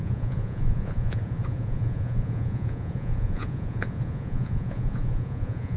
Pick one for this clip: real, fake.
fake